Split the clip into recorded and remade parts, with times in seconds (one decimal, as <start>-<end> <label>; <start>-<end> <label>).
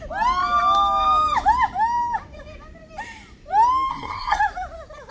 0.0-3.9 recorded; 3.9-4.4 remade; 4.4-5.1 recorded